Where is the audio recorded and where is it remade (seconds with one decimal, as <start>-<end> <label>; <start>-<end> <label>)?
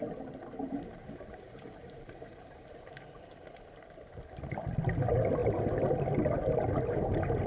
0.0-0.4 recorded; 0.4-3.7 remade; 3.7-5.4 recorded; 5.4-5.9 remade; 5.9-7.5 recorded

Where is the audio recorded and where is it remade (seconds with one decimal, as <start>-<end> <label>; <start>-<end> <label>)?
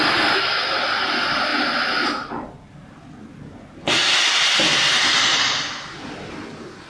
0.0-6.9 recorded